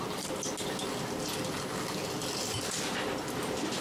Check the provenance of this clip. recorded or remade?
recorded